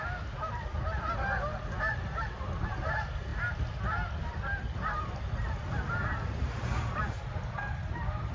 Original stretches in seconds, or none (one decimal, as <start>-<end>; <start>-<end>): 0.0-8.3